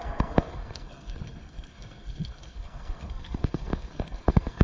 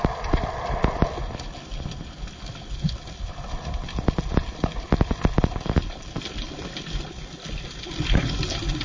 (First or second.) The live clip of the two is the second